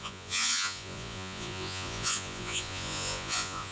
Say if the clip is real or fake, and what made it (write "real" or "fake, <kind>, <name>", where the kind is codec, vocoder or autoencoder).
fake, vocoder, Vocos